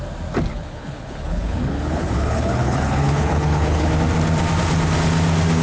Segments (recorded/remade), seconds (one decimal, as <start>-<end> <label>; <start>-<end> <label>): 0.0-0.5 recorded; 0.5-3.9 remade; 3.9-5.6 recorded